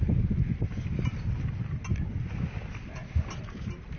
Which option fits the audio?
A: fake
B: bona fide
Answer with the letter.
B